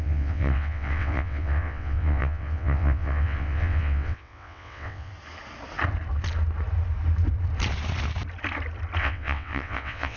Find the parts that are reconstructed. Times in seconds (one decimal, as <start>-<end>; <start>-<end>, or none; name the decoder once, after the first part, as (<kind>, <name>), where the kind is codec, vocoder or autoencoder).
0.0-5.1 (vocoder, WaveNeXt); 9.0-10.2